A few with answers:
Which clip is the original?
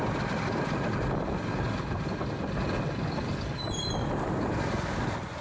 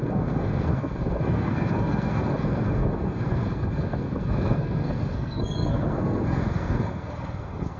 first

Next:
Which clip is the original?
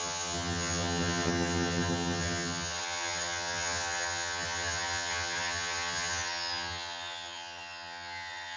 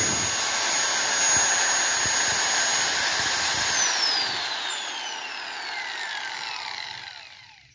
second